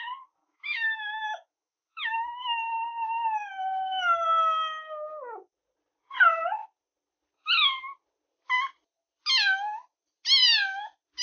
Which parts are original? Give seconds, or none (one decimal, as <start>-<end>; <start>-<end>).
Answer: 0.0-0.4; 2.6-11.2

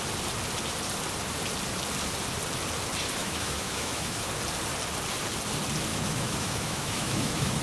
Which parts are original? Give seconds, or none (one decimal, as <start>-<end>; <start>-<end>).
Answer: 0.0-3.2; 4.3-5.9

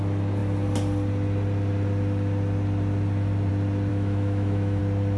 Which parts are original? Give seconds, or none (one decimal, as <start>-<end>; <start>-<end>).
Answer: 0.0-3.9; 4.8-5.2

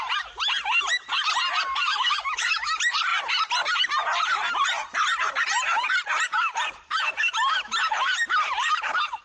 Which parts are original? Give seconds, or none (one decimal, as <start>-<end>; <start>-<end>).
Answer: 0.0-1.9; 2.7-9.2

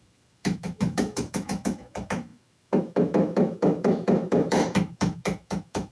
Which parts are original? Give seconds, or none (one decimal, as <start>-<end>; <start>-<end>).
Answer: none